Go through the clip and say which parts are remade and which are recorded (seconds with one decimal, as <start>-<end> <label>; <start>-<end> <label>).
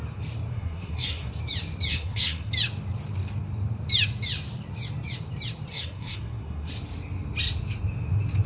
0.0-0.5 recorded; 0.5-1.3 remade; 1.3-1.9 recorded; 1.9-2.5 remade; 2.5-5.7 recorded; 5.7-6.7 remade; 6.7-8.5 recorded